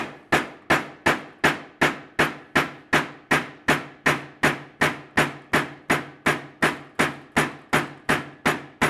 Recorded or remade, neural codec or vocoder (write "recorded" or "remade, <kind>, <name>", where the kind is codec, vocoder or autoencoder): recorded